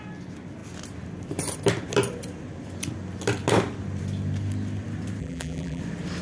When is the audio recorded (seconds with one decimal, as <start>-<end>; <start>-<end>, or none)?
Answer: 0.0-5.2; 5.8-6.2